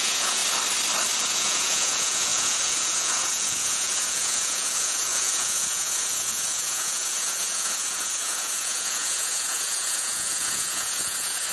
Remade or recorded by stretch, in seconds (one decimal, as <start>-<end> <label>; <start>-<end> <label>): 0.0-0.4 remade; 0.4-1.2 recorded; 1.2-11.5 remade